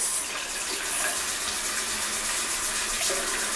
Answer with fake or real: real